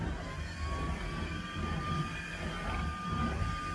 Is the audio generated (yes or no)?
no